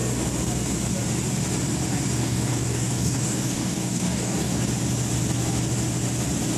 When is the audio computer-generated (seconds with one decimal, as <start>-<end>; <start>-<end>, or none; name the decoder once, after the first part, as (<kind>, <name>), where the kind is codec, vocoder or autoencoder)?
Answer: 2.2-4.6 (codec, DAC)